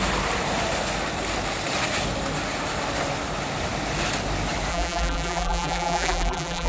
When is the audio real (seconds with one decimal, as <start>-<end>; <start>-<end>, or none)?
0.0-4.7